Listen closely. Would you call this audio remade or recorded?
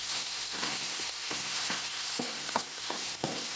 remade